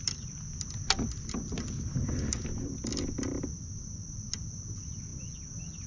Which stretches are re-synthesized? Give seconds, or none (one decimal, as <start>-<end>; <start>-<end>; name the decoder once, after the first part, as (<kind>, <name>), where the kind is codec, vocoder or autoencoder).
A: none